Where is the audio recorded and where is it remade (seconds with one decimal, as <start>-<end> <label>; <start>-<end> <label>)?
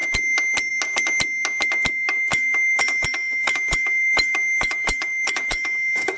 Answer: 0.0-2.3 recorded; 2.3-6.2 remade